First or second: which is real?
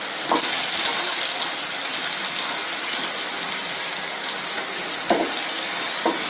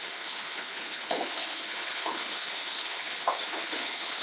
first